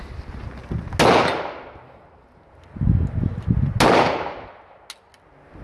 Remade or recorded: recorded